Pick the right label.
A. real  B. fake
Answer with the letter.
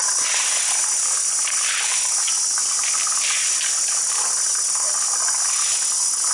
A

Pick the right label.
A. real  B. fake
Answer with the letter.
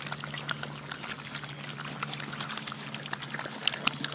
A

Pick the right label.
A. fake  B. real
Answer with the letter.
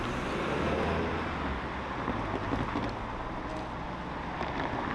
B